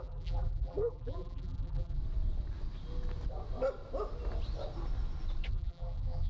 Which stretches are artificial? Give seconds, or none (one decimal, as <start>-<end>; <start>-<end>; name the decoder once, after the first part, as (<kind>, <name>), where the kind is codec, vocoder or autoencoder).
0.0-2.0 (vocoder, BigVGAN v2); 5.5-6.3